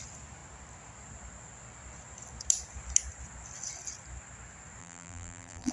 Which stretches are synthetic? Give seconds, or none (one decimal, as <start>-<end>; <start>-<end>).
4.8-5.7